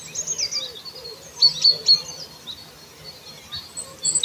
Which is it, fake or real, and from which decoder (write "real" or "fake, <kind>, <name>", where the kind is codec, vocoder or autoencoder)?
real